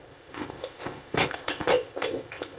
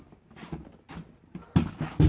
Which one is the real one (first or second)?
second